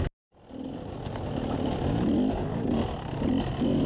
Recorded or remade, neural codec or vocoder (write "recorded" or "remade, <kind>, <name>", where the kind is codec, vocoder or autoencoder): recorded